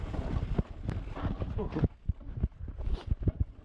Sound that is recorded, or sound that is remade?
recorded